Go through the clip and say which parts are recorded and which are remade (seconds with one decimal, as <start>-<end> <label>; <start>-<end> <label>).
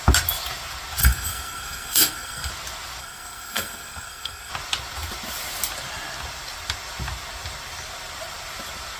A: 0.0-1.0 recorded; 1.0-2.5 remade; 2.5-3.0 recorded; 3.0-4.5 remade; 4.5-9.0 recorded